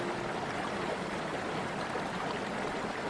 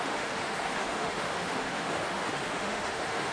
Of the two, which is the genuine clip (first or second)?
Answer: first